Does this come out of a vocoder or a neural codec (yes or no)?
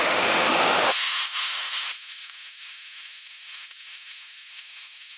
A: yes